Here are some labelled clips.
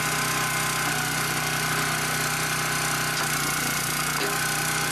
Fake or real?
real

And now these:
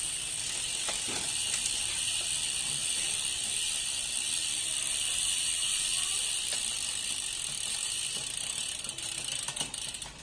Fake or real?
real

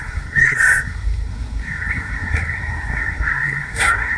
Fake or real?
fake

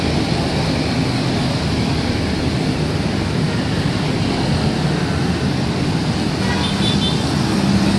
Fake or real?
real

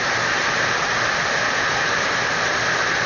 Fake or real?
real